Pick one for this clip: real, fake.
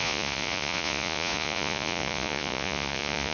fake